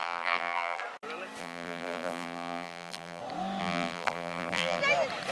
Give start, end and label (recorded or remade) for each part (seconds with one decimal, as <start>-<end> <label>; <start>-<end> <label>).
0.0-0.8 remade; 0.8-1.4 recorded; 1.4-3.2 remade; 3.2-3.6 recorded; 3.6-4.8 remade; 4.8-5.3 recorded